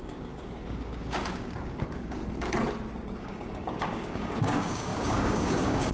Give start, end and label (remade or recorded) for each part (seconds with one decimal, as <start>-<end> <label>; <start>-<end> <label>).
0.0-2.2 remade; 2.2-3.2 recorded; 3.2-5.9 remade